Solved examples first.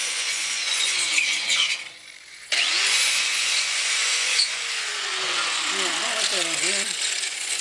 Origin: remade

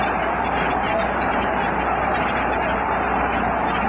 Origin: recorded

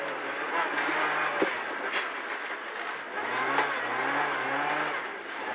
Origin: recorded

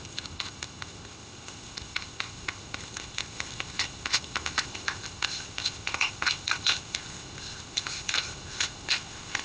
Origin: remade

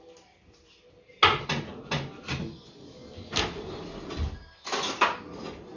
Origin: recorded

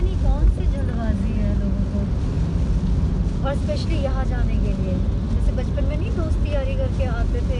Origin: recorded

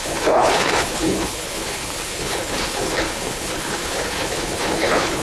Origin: remade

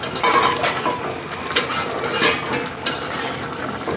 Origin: recorded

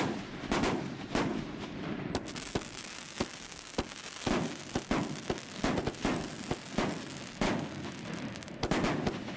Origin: recorded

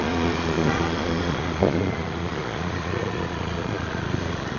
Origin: remade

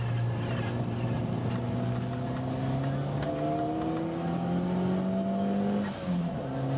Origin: recorded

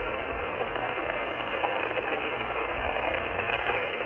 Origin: remade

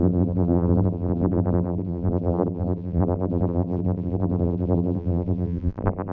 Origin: remade